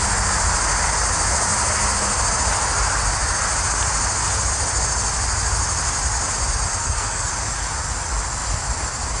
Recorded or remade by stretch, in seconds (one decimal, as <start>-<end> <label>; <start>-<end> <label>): 0.0-6.8 recorded; 6.8-7.3 remade; 7.3-9.2 recorded

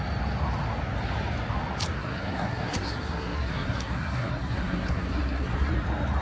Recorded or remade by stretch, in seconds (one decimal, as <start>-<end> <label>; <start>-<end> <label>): 0.0-2.0 recorded; 2.0-5.7 remade; 5.7-6.2 recorded

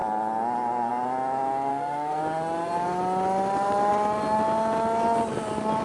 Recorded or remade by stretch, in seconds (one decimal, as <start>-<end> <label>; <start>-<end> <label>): 0.0-1.7 recorded; 1.7-2.2 remade; 2.2-5.8 recorded

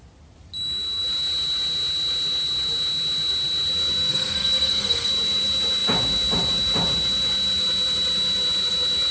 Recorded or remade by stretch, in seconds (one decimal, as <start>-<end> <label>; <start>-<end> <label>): 0.0-4.1 recorded; 4.1-5.1 remade; 5.1-9.1 recorded

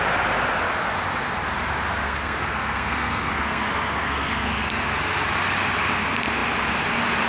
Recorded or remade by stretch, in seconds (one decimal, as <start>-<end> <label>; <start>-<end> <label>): 0.0-1.9 recorded; 1.9-4.4 remade; 4.4-7.3 recorded

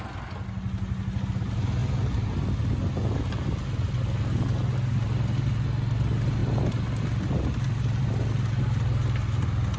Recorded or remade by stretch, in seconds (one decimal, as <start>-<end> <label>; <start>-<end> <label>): 0.0-9.8 recorded